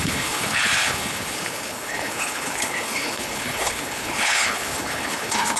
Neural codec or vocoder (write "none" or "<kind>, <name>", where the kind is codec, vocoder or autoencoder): codec, HILCodec